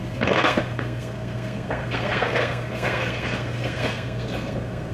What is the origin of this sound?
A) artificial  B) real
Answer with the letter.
A